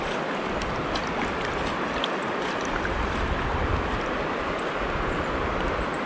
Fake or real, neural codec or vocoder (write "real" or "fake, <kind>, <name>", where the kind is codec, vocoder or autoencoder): real